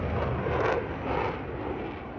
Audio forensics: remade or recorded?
recorded